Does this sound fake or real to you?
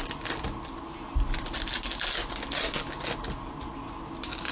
real